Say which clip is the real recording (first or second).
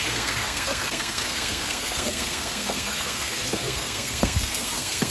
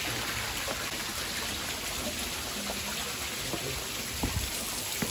second